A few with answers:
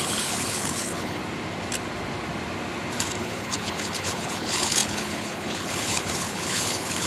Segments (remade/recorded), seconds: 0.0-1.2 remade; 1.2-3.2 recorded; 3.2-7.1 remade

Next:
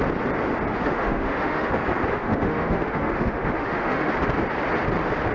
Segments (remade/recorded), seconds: 0.0-0.7 recorded; 0.7-1.7 remade; 1.7-2.1 recorded; 2.1-4.1 remade; 4.1-5.3 recorded

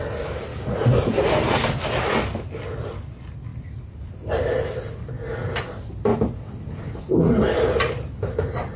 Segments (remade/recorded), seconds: 0.0-8.8 recorded

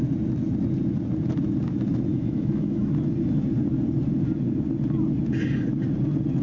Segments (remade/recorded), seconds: 0.0-2.1 recorded; 2.1-2.9 remade; 2.9-6.4 recorded